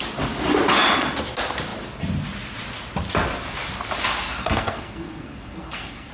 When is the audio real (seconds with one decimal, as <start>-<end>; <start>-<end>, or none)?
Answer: 0.0-4.4